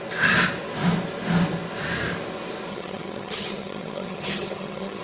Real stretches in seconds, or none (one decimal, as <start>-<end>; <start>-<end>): 0.0-2.7